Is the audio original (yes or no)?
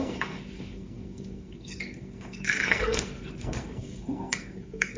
no